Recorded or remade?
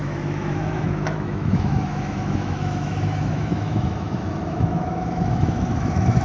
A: remade